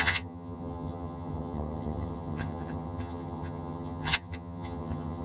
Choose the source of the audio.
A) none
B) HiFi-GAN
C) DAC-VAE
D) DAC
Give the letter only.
B